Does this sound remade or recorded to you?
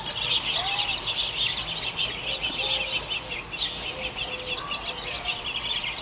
recorded